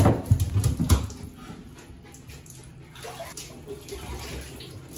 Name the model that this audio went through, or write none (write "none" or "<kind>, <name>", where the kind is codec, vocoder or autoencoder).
none